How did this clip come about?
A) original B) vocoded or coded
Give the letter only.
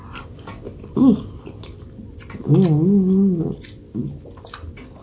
A